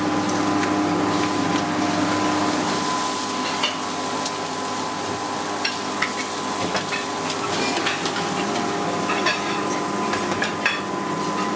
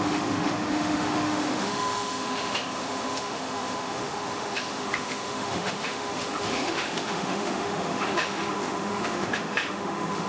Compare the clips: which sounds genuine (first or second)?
first